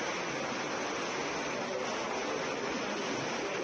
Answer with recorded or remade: recorded